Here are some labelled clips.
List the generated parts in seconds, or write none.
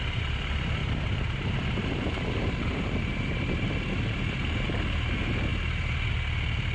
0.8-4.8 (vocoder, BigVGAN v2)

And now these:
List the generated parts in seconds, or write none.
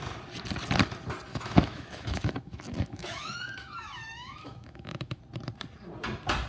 1.3-5.2 (autoencoder, DAC-VAE)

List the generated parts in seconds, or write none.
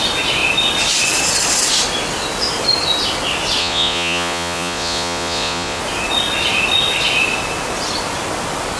3.6-5.8 (vocoder, Vocos)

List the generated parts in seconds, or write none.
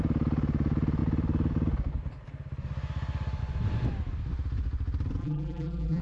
5.2-6.0 (vocoder, BigVGAN v2)